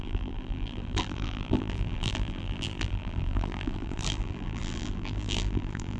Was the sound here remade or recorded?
remade